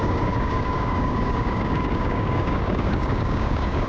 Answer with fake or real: fake